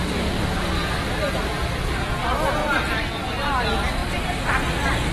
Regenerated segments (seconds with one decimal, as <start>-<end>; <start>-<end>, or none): 0.0-2.1